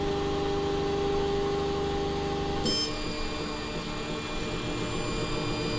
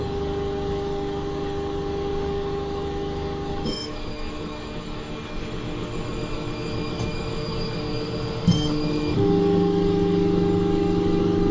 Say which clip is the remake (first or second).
second